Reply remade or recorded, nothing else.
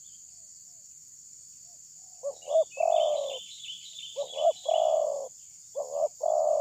recorded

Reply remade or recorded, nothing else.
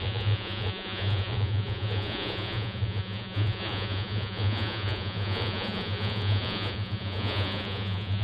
remade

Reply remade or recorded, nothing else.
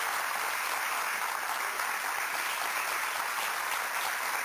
recorded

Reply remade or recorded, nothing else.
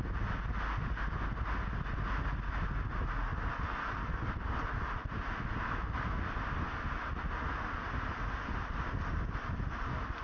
recorded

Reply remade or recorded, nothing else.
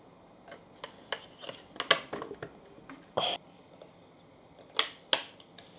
recorded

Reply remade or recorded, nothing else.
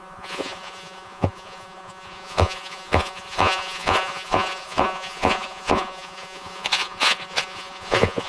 remade